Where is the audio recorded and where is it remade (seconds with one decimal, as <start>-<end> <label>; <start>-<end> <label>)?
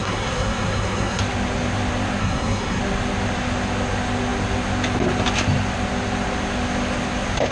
0.0-1.2 remade; 1.2-2.2 recorded; 2.2-2.8 remade; 2.8-7.5 recorded